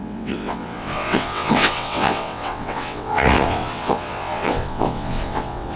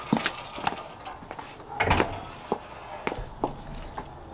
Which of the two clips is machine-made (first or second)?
first